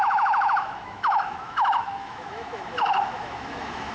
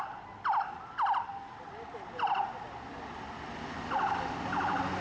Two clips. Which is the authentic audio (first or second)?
second